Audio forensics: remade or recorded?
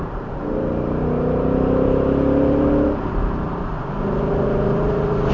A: remade